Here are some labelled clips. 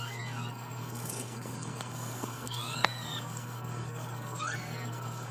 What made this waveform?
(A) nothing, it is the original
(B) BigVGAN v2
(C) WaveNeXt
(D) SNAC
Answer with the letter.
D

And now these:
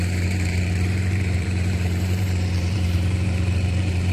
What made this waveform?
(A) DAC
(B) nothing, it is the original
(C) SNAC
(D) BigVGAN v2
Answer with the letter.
D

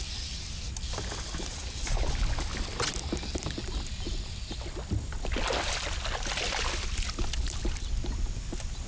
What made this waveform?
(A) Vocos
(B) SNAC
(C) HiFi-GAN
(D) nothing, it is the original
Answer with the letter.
D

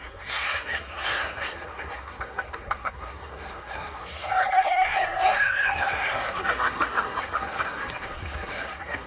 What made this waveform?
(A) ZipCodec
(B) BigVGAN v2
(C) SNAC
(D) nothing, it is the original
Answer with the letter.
C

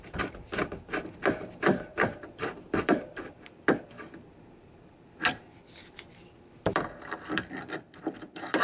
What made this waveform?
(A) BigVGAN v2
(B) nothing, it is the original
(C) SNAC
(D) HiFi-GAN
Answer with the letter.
A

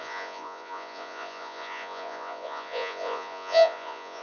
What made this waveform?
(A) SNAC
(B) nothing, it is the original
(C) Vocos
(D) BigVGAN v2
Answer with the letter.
C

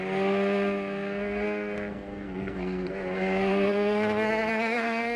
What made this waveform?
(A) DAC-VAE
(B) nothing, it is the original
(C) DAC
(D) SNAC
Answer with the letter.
D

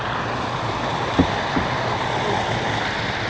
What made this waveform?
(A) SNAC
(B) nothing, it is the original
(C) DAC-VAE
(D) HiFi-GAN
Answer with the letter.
B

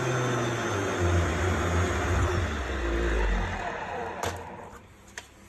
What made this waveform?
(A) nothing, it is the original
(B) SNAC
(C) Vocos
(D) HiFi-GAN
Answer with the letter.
A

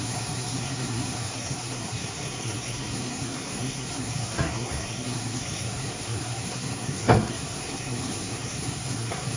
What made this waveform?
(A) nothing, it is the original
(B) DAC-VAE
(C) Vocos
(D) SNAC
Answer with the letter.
D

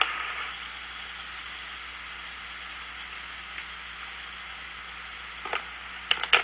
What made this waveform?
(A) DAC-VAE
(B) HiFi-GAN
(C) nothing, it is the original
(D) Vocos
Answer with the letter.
C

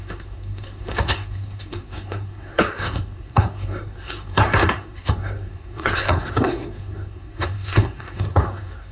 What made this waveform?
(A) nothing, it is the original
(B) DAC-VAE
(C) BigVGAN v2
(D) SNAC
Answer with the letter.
D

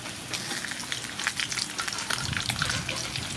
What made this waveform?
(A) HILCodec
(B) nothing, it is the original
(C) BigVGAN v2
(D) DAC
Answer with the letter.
B